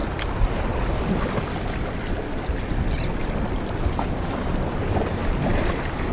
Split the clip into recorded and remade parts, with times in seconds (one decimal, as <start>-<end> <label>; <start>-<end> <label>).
0.0-6.1 recorded